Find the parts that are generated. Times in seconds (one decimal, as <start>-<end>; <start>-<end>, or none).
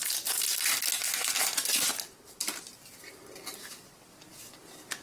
none